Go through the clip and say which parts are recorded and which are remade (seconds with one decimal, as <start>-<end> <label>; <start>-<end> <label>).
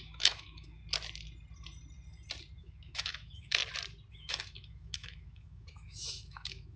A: 0.0-0.8 remade; 0.8-2.6 recorded; 2.6-3.6 remade; 3.6-4.1 recorded; 4.1-6.8 remade